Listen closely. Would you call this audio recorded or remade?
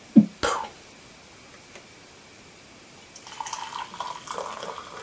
recorded